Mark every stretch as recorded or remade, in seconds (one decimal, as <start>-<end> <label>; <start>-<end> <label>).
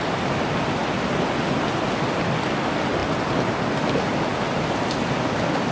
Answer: 0.0-5.7 recorded